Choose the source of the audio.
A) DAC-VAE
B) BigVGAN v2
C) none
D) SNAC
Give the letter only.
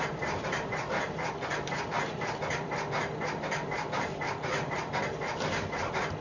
B